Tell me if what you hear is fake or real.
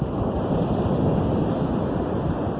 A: real